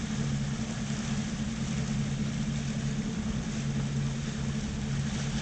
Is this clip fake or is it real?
real